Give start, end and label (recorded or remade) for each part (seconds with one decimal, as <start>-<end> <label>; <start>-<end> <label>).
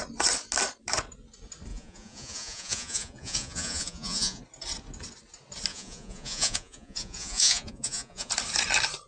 0.0-1.7 recorded; 1.7-4.4 remade; 4.4-5.7 recorded; 5.7-8.3 remade; 8.3-9.1 recorded